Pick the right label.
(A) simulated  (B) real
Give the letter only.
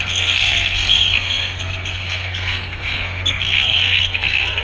A